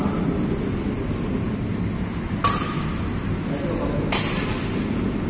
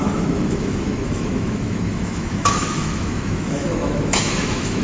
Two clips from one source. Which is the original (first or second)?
first